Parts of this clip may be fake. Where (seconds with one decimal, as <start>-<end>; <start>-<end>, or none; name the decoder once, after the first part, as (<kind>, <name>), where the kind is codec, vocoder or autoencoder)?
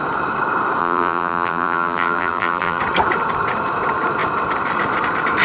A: 0.8-2.8 (vocoder, BigVGAN v2)